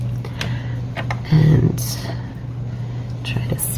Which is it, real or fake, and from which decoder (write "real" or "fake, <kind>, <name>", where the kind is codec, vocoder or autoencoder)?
real